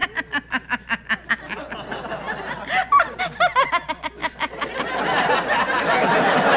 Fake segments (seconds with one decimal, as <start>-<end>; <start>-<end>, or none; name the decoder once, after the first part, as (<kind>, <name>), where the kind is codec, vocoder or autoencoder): none